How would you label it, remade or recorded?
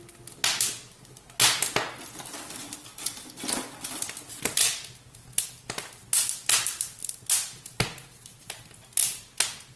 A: recorded